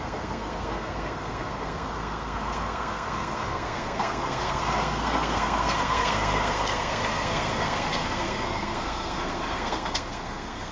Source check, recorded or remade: remade